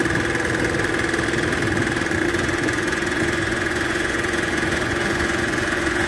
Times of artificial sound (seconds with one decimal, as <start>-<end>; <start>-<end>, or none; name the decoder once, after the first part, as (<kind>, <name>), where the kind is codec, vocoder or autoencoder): 2.3-6.1 (vocoder, Vocos)